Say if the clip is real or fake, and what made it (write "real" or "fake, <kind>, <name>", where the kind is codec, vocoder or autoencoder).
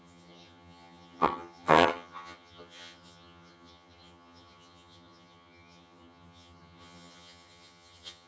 fake, vocoder, HiFi-GAN